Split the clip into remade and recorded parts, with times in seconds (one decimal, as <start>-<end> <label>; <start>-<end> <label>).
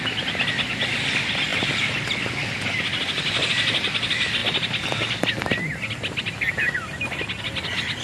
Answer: 0.0-8.0 recorded